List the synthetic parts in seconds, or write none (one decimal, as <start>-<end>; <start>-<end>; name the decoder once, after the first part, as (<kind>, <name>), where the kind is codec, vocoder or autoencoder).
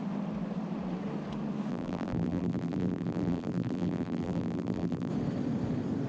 1.7-5.1 (vocoder, BigVGAN v2)